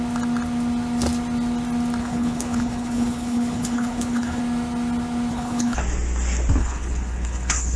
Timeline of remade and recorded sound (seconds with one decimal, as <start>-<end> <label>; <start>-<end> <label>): 0.0-2.0 recorded; 2.0-4.4 remade; 4.4-5.3 recorded; 5.3-5.8 remade; 5.8-6.6 recorded; 6.6-7.8 remade